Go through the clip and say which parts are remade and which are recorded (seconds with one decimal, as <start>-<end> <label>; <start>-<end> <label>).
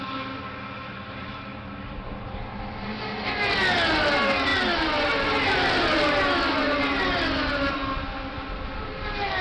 0.0-9.4 recorded